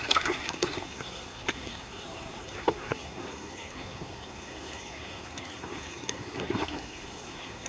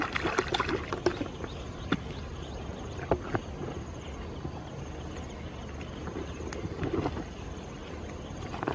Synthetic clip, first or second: first